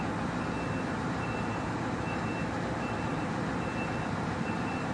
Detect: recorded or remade recorded